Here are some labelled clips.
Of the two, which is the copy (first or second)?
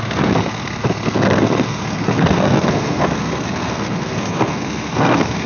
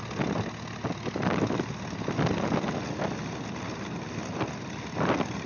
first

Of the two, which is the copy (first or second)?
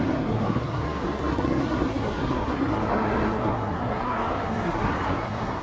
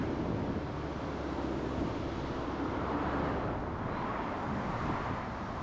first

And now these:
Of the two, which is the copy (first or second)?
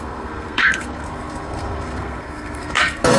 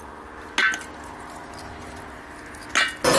first